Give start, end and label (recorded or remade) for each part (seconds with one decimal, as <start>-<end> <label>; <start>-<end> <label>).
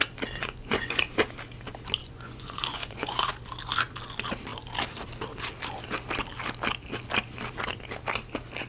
0.0-0.4 recorded; 0.4-1.0 remade; 1.0-2.0 recorded; 2.0-3.3 remade; 3.3-8.7 recorded